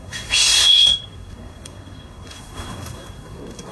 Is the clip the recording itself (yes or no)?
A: no